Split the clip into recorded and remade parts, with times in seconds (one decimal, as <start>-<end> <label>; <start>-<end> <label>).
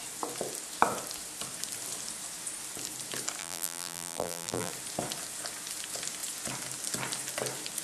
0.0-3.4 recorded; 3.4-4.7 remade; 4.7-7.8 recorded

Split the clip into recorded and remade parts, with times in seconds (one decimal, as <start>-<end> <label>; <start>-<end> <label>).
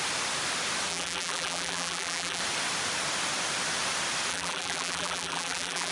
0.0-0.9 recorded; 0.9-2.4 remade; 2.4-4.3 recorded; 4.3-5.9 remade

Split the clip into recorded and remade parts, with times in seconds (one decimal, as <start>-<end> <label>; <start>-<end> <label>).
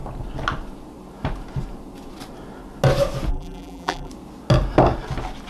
0.0-3.3 recorded; 3.3-4.1 remade; 4.1-5.5 recorded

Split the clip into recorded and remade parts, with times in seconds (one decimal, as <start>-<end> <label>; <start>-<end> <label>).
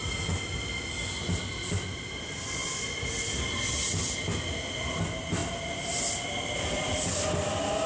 0.0-7.9 recorded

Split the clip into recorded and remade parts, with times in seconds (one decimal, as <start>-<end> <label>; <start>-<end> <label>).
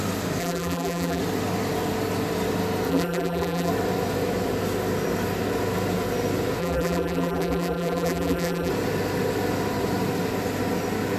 0.0-0.4 recorded; 0.4-1.2 remade; 1.2-2.9 recorded; 2.9-3.7 remade; 3.7-6.6 recorded; 6.6-8.7 remade; 8.7-11.2 recorded